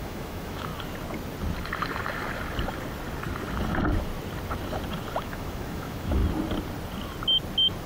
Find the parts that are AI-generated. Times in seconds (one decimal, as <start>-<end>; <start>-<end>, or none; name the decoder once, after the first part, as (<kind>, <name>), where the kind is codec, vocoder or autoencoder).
0.0-0.7 (autoencoder, DAC-VAE); 5.2-6.2